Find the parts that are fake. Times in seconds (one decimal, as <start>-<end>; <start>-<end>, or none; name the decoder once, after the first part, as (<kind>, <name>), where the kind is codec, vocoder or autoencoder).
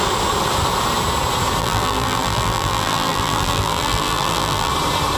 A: 1.6-4.7 (vocoder, BigVGAN v2)